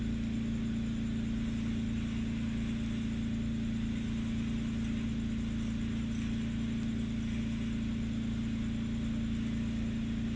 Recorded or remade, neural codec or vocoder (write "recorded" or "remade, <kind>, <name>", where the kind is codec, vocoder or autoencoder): recorded